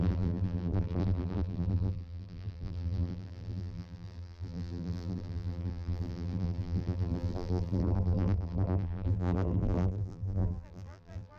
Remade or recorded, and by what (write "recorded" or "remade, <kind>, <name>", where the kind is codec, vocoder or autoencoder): remade, vocoder, BigVGAN v2